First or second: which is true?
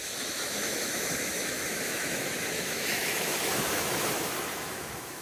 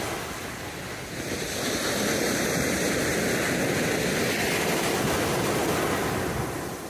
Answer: second